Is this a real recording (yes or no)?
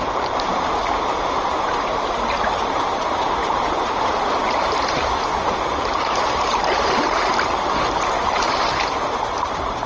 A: no